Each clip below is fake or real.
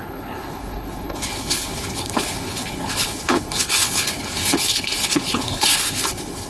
fake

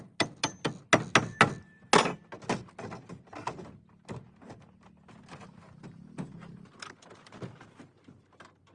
real